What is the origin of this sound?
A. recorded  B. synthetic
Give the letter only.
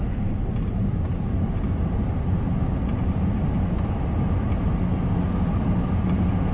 A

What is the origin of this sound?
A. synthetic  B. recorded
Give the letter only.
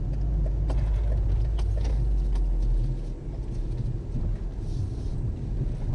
B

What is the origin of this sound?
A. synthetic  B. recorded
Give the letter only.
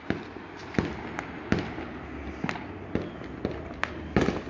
B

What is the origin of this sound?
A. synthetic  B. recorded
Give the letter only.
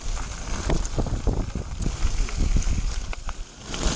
B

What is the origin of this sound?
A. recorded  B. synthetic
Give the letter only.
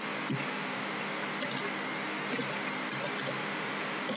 A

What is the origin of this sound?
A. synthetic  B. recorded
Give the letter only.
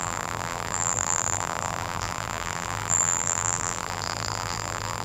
A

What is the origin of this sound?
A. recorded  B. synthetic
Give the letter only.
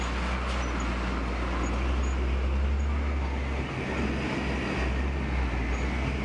A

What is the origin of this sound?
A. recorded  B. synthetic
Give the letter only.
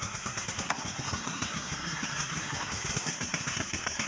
B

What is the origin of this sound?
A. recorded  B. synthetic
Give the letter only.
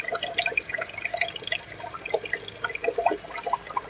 A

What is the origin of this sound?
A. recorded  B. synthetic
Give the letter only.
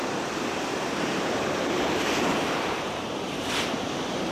B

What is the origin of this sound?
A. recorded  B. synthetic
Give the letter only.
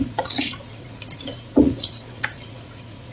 B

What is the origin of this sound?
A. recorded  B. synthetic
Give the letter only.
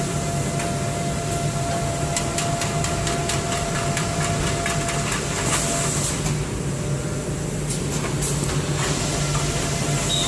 A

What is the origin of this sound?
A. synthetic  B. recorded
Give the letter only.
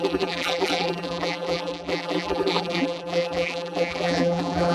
A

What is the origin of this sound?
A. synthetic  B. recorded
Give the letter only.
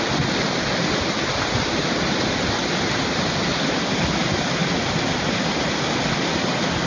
B